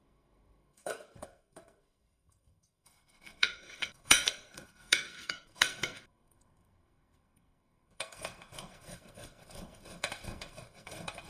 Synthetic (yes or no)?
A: yes